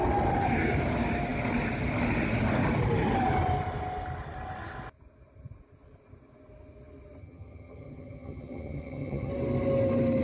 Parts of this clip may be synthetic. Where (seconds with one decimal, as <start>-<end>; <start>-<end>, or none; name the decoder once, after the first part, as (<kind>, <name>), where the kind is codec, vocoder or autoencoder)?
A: 7.2-9.3 (vocoder, HiFi-GAN)

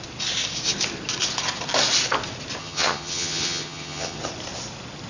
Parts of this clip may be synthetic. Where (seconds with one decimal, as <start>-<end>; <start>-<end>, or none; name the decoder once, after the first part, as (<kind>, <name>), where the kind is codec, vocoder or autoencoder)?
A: 2.6-4.2 (vocoder, HiFi-GAN)

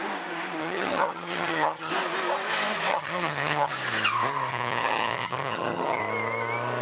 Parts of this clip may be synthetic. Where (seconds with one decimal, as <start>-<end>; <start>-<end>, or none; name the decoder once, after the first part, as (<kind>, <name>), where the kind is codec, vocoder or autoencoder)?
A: 0.6-1.9 (vocoder, HiFi-GAN); 2.9-3.7; 4.5-6.0